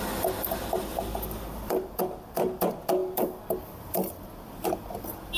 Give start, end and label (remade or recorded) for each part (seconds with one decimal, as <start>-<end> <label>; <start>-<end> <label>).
0.0-0.9 recorded; 0.9-2.0 remade; 2.0-3.0 recorded; 3.0-3.9 remade; 3.9-5.4 recorded